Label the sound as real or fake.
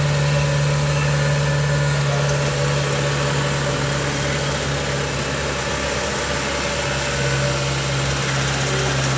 real